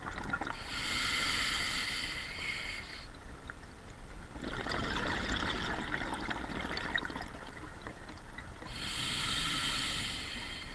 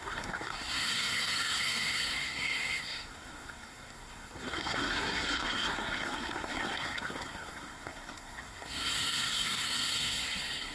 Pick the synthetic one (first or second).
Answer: second